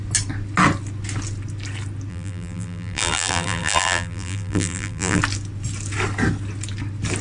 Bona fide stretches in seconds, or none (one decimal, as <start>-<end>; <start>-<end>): 0.0-2.1; 5.2-7.2